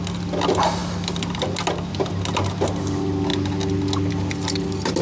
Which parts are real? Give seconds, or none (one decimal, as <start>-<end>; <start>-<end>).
0.0-5.0